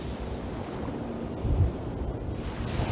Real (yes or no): yes